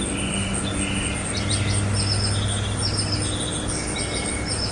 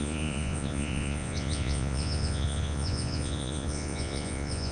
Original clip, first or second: first